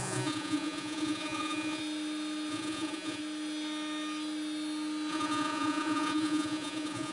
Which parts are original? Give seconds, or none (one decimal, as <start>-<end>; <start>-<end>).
1.8-2.5; 3.2-5.1